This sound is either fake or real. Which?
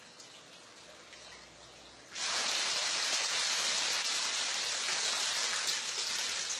real